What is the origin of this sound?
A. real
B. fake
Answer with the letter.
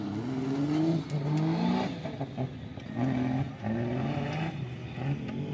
A